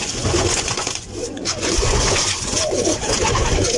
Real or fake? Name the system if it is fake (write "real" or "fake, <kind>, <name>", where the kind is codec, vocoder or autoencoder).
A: fake, vocoder, Vocos